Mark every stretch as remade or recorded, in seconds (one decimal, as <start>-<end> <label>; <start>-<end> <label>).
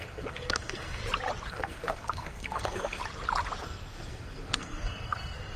0.0-1.0 remade; 1.0-1.5 recorded; 1.5-3.0 remade; 3.0-3.6 recorded; 3.6-5.6 remade